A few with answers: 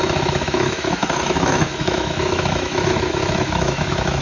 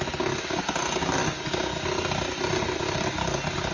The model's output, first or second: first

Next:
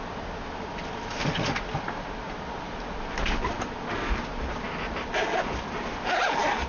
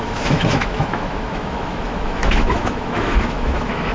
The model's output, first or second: second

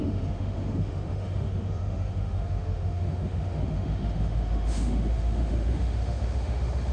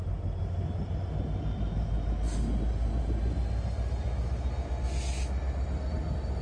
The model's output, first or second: first